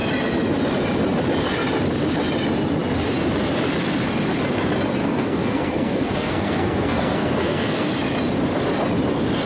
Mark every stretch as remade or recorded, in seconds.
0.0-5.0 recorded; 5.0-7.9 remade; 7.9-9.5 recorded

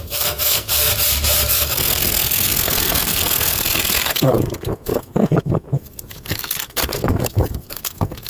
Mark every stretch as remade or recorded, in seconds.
0.0-0.9 remade; 0.9-1.5 recorded; 1.5-8.3 remade

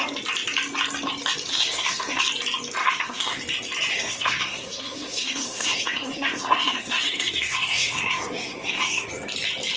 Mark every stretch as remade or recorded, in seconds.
0.0-1.5 recorded; 1.5-2.2 remade; 2.2-2.8 recorded; 2.8-3.4 remade; 3.4-3.9 recorded; 3.9-9.1 remade; 9.1-9.8 recorded

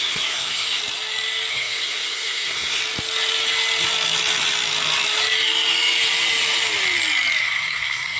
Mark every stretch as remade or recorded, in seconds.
0.0-0.8 remade; 0.8-1.5 recorded; 1.5-2.8 remade; 2.8-7.4 recorded; 7.4-8.2 remade

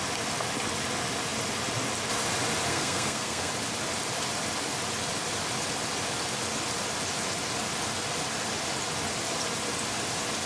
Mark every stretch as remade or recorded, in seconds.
0.0-2.7 recorded; 2.7-3.5 remade; 3.5-10.5 recorded

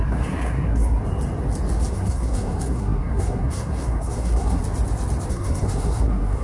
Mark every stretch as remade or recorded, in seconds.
0.0-1.0 remade; 1.0-1.9 recorded; 1.9-4.6 remade; 4.6-5.3 recorded; 5.3-6.4 remade

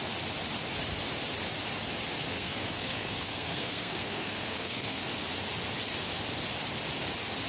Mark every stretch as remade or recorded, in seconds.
0.0-2.3 recorded; 2.3-5.0 remade; 5.0-7.5 recorded